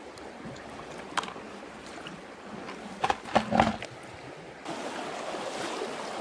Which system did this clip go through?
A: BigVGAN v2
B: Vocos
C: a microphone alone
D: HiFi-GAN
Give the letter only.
C